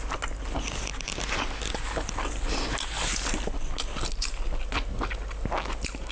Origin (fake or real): real